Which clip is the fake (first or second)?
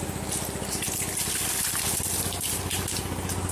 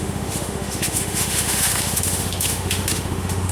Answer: second